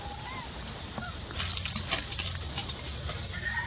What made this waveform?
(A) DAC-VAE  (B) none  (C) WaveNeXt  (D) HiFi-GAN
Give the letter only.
B